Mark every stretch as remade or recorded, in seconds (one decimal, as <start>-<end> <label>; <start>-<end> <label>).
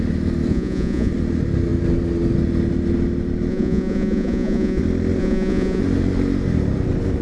0.0-0.5 recorded; 0.5-1.1 remade; 1.1-3.5 recorded; 3.5-4.8 remade; 4.8-5.2 recorded; 5.2-5.8 remade; 5.8-7.2 recorded